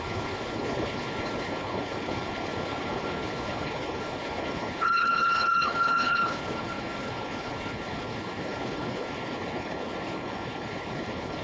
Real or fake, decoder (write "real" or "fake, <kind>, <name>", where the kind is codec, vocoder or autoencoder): fake, codec, HILCodec